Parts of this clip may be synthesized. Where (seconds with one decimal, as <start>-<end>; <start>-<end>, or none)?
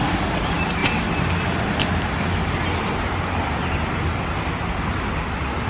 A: none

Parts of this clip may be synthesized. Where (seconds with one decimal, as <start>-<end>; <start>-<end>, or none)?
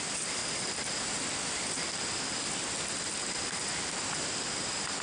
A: none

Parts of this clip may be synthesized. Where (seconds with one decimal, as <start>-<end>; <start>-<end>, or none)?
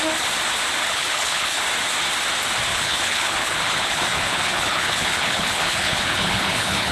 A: 0.8-1.6; 2.7-6.9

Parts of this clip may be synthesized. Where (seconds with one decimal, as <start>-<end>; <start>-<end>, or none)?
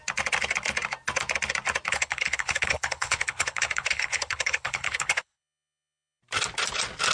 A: 1.9-6.2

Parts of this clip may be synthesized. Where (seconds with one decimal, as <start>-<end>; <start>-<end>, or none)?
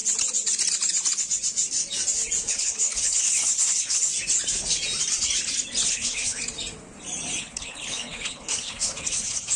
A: 2.5-4.1; 5.9-6.4; 7.4-9.6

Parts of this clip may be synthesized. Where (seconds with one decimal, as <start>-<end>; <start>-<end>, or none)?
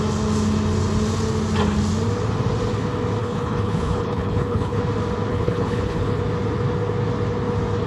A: 3.2-4.8; 5.3-6.2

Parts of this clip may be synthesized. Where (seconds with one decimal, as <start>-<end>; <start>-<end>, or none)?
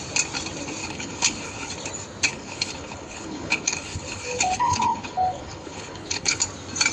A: 0.8-1.7; 2.3-6.4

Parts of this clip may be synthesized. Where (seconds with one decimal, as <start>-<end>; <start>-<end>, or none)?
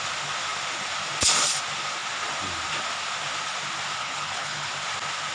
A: 4.0-4.7